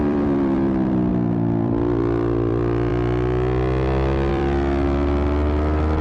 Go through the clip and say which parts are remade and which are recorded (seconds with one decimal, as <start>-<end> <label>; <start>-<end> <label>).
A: 0.0-2.9 remade; 2.9-4.3 recorded; 4.3-6.0 remade